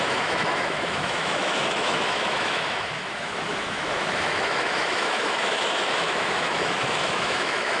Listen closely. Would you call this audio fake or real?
fake